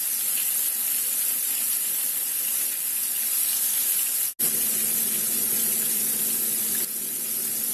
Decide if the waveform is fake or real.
real